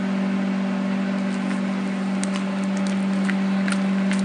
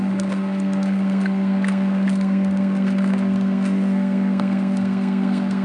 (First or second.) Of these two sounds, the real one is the first